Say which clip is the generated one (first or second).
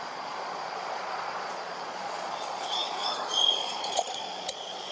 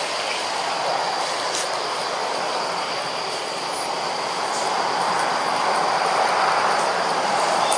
first